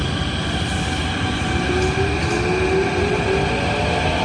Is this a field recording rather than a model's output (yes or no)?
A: yes